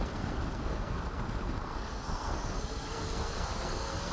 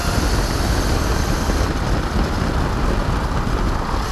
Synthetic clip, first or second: first